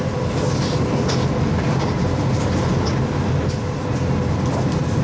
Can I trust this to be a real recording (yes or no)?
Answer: yes